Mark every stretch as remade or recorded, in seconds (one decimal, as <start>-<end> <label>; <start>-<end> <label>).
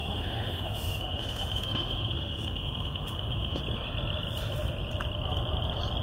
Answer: 0.0-3.6 remade; 3.6-6.0 recorded